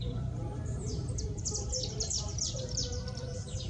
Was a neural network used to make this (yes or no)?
yes